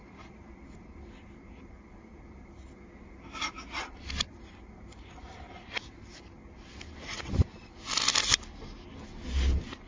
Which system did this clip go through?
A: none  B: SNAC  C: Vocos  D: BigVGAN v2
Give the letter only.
A